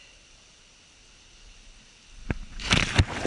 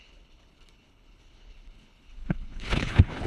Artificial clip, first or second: second